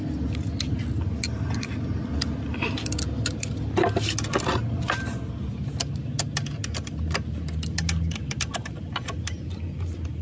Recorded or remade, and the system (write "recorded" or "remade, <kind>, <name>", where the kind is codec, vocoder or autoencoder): recorded